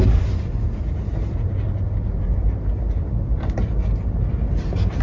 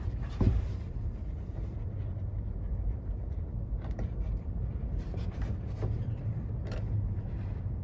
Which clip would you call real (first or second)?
first